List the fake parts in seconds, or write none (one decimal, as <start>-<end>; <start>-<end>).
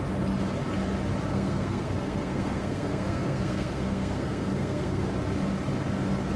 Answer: 1.3-5.1